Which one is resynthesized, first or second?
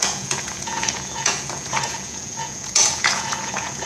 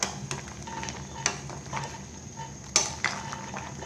first